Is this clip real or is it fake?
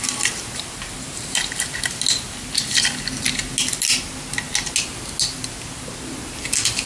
real